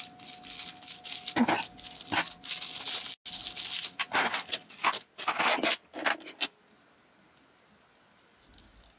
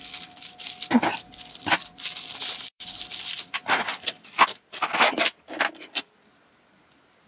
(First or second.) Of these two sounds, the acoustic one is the first